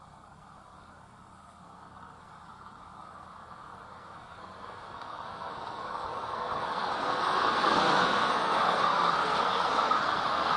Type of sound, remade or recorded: remade